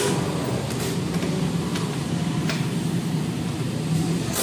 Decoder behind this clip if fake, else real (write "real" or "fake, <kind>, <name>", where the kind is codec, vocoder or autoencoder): real